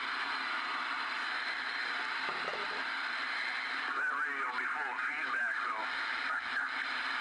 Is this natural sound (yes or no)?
yes